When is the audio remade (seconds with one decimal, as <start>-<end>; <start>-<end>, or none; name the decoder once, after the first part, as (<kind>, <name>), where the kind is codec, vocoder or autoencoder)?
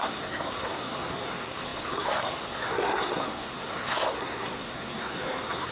0.0-5.7 (codec, SNAC)